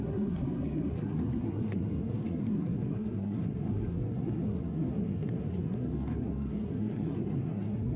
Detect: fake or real fake